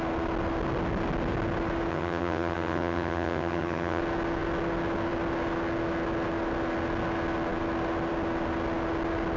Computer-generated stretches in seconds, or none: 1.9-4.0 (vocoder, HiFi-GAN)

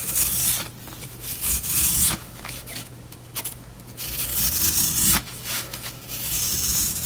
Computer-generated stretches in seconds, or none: 0.0-0.4 (autoencoder, DAC-VAE); 1.0-4.3; 5.1-7.1

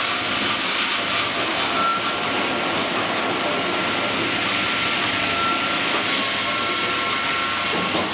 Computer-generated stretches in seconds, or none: none

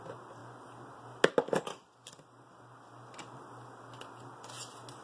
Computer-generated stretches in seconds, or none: none

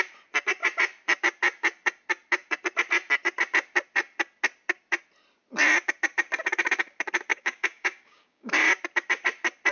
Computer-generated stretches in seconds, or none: 7.3-8.7 (codec, DAC)

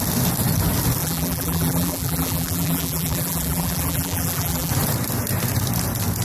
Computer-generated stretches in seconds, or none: 1.0-4.7 (vocoder, BigVGAN v2)

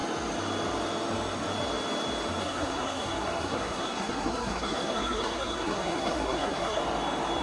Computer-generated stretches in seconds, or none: 2.4-6.8 (codec, SNAC)

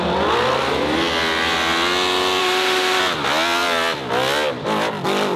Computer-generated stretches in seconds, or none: 2.4-3.0 (autoencoder, DAC-VAE)